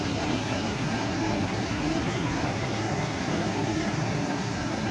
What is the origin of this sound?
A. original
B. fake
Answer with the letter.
B